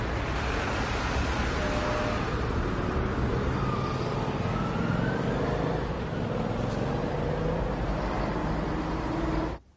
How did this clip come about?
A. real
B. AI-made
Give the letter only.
A